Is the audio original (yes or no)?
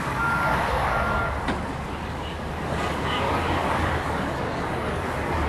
no